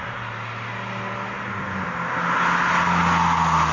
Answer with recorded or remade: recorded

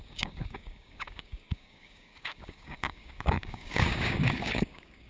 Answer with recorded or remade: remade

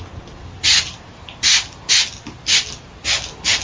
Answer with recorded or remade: recorded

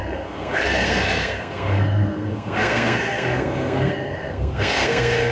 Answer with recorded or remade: remade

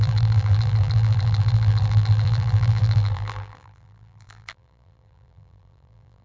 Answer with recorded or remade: remade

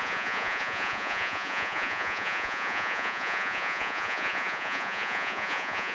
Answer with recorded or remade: remade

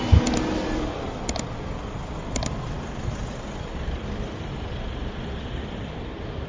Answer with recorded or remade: recorded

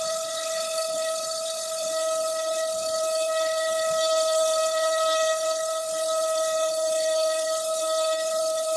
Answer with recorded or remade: remade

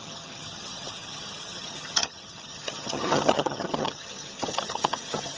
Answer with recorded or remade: remade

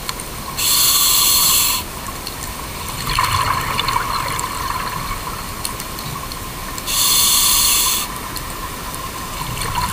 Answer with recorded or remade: recorded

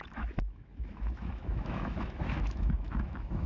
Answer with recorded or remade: remade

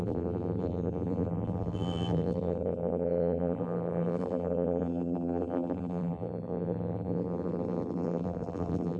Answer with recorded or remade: remade